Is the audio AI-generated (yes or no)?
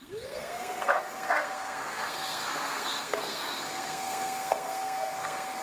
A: yes